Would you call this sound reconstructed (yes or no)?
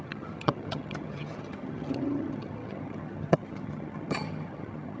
yes